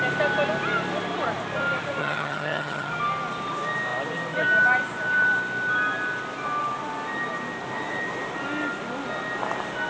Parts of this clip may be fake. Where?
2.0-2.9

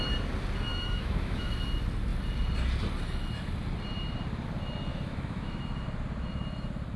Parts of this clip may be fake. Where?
0.7-1.5; 4.9-5.6

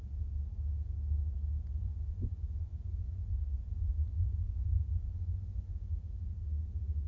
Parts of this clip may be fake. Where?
1.8-5.9